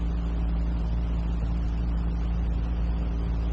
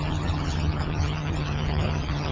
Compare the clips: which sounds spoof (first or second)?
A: second